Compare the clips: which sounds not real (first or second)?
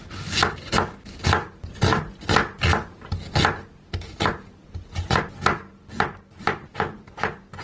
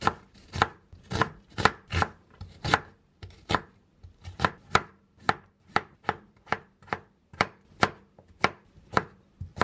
second